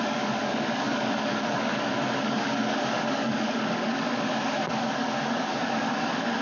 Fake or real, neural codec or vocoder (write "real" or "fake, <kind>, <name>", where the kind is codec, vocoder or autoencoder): fake, codec, DAC